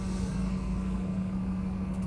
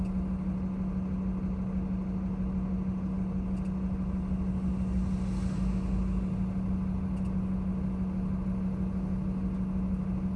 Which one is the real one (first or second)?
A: second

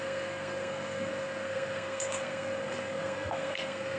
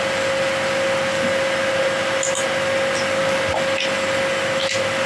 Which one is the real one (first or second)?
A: second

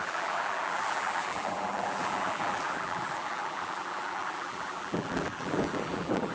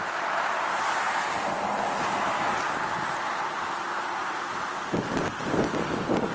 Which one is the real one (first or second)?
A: second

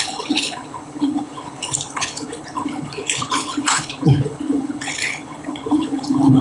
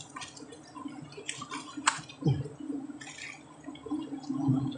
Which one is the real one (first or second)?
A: second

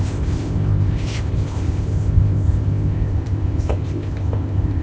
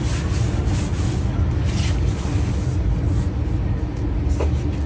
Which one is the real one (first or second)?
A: second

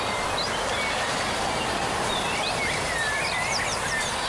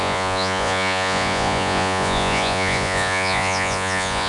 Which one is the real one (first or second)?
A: first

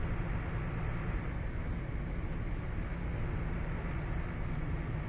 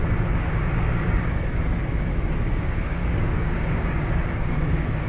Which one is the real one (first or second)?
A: first